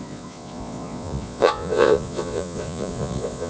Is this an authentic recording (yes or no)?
no